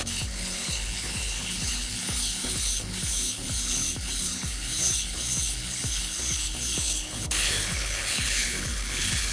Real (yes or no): no